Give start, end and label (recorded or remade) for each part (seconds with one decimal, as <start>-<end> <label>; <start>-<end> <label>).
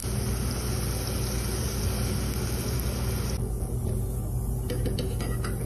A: 0.0-5.7 recorded